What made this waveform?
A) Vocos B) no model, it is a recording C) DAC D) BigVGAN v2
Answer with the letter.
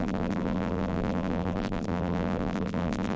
D